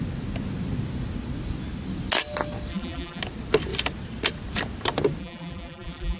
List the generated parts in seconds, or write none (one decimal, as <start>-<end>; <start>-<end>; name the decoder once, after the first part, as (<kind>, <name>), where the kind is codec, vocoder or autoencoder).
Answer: 2.7-3.2 (vocoder, BigVGAN v2); 5.2-6.2